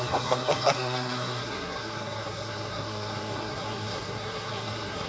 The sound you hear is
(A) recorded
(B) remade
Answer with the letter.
B